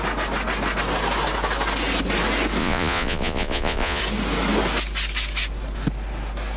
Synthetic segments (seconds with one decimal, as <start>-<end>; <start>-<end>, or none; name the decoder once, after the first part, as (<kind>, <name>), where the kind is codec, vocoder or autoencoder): 2.6-4.0 (vocoder, Vocos)